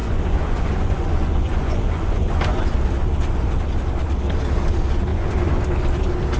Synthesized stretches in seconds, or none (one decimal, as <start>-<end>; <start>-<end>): 0.0-2.6; 5.1-5.6